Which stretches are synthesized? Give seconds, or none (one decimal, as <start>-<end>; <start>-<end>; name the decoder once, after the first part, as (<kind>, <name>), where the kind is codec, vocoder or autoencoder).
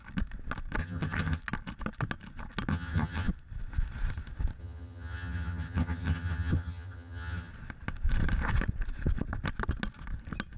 0.8-1.4 (vocoder, HiFi-GAN); 2.7-3.3; 4.6-7.5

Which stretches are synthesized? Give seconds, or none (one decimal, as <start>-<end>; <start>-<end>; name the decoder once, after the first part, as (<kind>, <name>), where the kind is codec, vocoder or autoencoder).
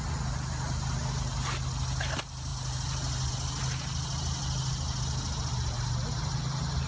none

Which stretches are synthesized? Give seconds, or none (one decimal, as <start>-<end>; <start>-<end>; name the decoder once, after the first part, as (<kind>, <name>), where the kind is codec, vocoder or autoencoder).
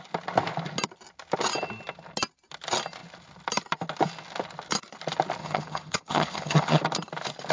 5.4-6.8 (vocoder, HiFi-GAN)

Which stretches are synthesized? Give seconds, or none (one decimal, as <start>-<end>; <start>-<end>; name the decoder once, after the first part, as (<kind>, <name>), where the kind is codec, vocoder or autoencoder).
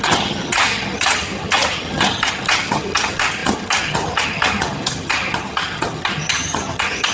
0.0-7.1 (vocoder, HiFi-GAN)